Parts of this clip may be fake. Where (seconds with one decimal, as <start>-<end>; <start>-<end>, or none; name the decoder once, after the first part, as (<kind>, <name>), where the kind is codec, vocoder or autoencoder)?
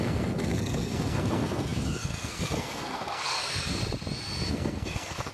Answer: 0.0-3.8 (codec, SNAC); 4.5-5.3